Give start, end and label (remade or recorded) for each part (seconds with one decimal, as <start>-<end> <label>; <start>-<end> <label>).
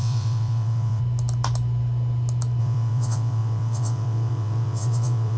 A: 0.0-1.0 remade; 1.0-2.6 recorded; 2.6-5.4 remade